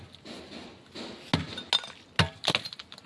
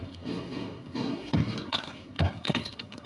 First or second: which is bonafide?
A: first